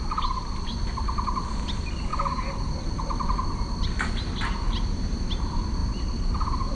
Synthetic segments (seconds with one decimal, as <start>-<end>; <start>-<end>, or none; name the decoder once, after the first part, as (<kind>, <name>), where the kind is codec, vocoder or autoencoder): none